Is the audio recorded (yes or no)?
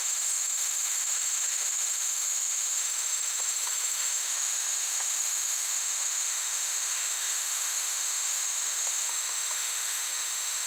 no